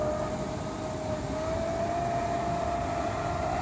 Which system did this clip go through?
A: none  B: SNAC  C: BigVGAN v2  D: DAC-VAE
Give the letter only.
A